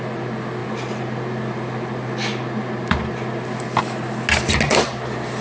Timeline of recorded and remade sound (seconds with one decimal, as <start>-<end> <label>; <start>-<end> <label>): 0.0-0.6 recorded; 0.6-3.8 remade; 3.8-5.4 recorded